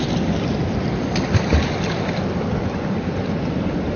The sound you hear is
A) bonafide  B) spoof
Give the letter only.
A